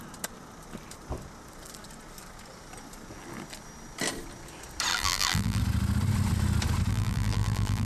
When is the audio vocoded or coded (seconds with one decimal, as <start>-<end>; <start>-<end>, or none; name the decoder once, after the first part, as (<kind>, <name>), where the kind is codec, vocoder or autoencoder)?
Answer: 4.9-5.6 (vocoder, BigVGAN v2); 6.9-7.9

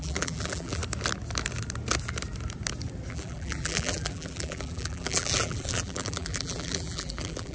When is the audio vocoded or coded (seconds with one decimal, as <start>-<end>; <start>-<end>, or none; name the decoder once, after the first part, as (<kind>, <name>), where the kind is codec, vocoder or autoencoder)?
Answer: 0.0-0.8 (vocoder, BigVGAN v2); 3.1-7.5

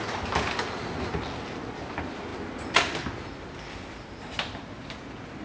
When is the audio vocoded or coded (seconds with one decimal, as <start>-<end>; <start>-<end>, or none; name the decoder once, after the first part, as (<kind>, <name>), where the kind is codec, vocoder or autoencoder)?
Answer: none

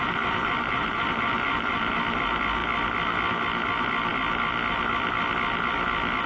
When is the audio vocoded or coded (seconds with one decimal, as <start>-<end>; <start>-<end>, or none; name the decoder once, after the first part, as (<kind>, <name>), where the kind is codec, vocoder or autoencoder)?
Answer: 0.0-2.0 (vocoder, BigVGAN v2)

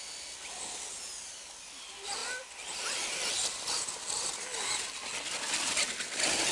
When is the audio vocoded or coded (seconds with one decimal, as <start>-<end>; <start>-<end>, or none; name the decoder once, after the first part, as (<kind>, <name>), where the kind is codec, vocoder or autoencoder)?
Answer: none

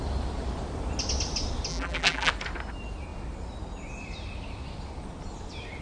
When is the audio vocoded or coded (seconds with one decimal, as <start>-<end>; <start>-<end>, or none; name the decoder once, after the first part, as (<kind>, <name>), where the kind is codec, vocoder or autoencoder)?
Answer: 1.7-2.3 (vocoder, BigVGAN v2)